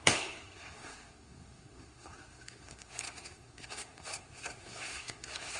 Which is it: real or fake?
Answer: fake